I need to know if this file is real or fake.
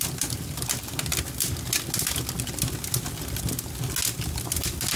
real